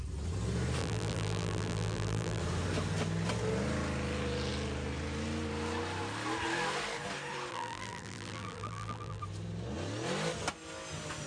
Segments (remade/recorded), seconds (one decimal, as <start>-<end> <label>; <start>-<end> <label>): 0.0-0.8 recorded; 0.8-2.4 remade; 2.4-7.5 recorded; 7.5-9.2 remade; 9.2-11.3 recorded